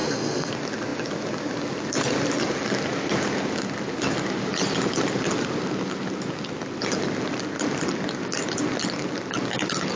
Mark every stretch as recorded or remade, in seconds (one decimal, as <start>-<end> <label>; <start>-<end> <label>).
0.0-0.5 remade; 0.5-10.0 recorded